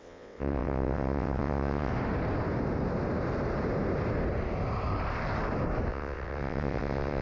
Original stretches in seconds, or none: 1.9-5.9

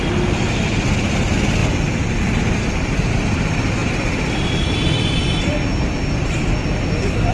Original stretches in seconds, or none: 0.0-7.3

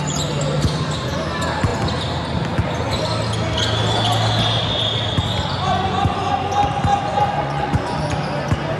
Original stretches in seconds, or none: 0.0-6.9; 8.0-8.8

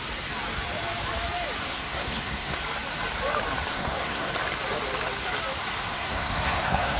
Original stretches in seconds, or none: 0.0-1.6; 2.6-3.7; 4.3-5.9